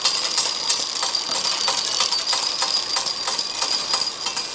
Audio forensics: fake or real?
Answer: real